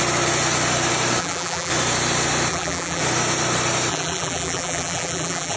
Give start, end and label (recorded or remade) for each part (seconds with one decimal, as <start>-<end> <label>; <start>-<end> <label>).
0.0-1.2 recorded; 1.2-1.7 remade; 1.7-2.5 recorded; 2.5-3.0 remade; 3.0-3.9 recorded; 3.9-5.6 remade

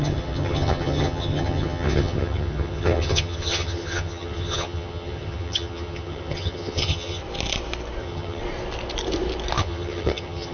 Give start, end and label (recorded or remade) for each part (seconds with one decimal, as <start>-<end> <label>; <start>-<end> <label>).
0.0-7.2 remade; 7.2-8.0 recorded; 8.0-8.4 remade; 8.4-9.6 recorded; 9.6-10.5 remade

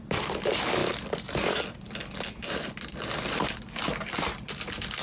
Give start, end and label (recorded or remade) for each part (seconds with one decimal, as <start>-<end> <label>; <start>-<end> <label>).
0.0-5.0 recorded

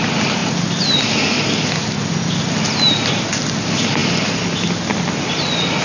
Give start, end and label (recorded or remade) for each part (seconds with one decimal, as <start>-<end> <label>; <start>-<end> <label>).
0.0-5.8 recorded

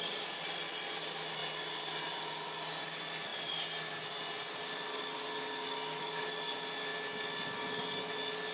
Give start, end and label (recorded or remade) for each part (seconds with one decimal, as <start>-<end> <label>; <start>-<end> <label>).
0.0-8.5 recorded

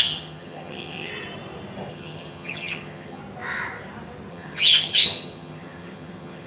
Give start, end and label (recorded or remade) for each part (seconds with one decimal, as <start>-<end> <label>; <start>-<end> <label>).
0.0-1.1 remade; 1.1-1.9 recorded; 1.9-3.2 remade; 3.2-4.3 recorded; 4.3-6.5 remade

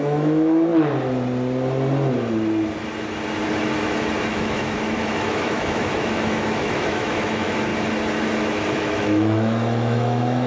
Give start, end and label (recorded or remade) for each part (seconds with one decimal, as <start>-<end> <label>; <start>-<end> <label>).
0.0-0.7 remade; 0.7-4.3 recorded; 4.3-7.7 remade; 7.7-8.8 recorded; 8.8-10.5 remade